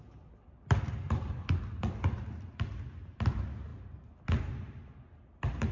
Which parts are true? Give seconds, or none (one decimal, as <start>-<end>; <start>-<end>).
0.0-5.7